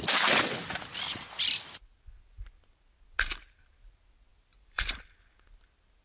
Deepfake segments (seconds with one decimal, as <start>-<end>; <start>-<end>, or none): 4.3-5.0